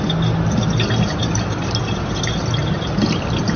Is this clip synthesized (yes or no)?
no